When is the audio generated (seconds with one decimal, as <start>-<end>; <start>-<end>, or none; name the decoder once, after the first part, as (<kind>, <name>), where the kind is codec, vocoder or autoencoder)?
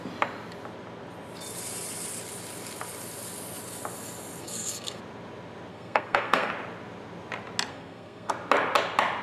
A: 4.4-5.0 (codec, SNAC); 5.7-6.5; 7.7-8.3